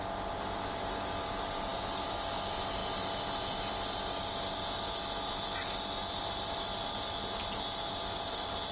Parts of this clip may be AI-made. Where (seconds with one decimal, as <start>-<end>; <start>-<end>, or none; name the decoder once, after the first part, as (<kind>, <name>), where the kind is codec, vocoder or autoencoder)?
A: none